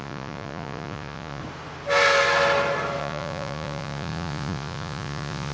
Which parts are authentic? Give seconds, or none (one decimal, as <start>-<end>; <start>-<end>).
1.4-3.0